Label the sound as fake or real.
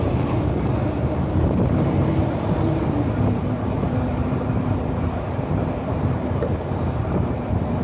fake